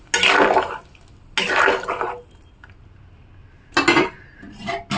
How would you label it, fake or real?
real